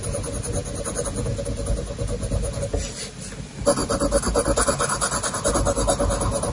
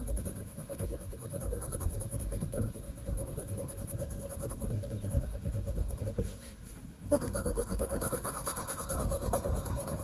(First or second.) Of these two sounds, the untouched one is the first